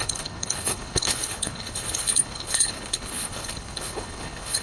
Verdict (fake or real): fake